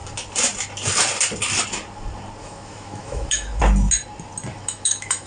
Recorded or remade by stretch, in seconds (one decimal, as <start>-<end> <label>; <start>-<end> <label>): 0.0-2.4 recorded; 2.4-3.6 remade; 3.6-4.5 recorded; 4.5-5.3 remade